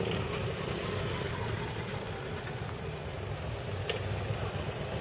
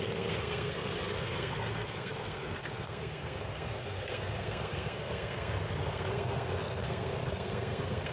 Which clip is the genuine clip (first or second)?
first